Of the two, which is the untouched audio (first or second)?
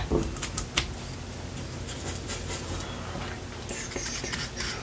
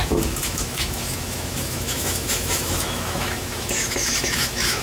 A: first